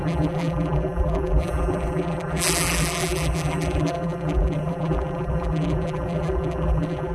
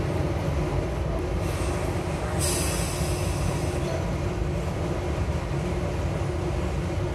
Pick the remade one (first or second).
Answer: first